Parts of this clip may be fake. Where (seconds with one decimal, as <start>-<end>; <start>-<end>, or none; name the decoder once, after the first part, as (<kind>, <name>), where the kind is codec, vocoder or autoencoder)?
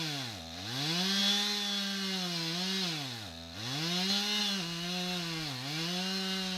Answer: none